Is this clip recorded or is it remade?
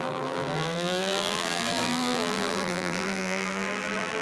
remade